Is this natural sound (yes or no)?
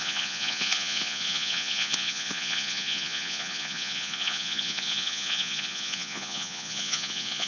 no